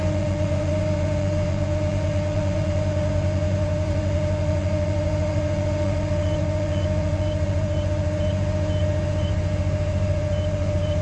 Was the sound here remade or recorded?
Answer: remade